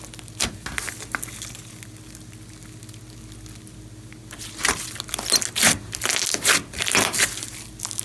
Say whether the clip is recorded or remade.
recorded